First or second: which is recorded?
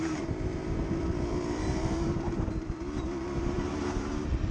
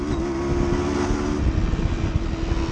second